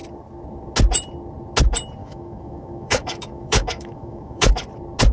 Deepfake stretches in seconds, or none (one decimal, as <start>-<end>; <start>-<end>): 2.0-4.5